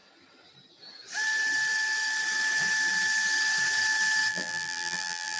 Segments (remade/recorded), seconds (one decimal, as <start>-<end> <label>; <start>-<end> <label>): 0.0-4.3 recorded; 4.3-5.4 remade